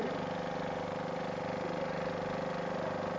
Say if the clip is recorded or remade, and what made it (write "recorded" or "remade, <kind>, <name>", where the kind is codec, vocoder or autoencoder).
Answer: recorded